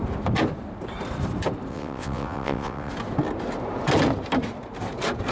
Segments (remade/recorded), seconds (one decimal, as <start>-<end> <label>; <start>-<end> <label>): 0.0-1.7 recorded; 1.7-2.9 remade; 2.9-5.3 recorded